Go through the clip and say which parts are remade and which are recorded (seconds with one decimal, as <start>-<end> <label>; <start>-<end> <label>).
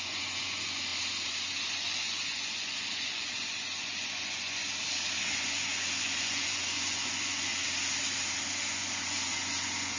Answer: 0.0-0.9 remade; 0.9-1.7 recorded; 1.7-4.6 remade; 4.6-5.2 recorded; 5.2-7.5 remade; 7.5-8.5 recorded; 8.5-10.0 remade